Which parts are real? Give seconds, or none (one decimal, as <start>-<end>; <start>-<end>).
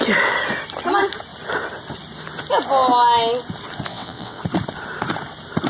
0.0-3.9; 4.4-5.7